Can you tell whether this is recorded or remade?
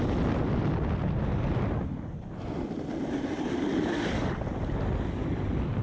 recorded